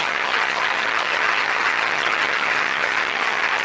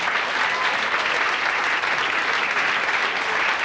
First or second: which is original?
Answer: second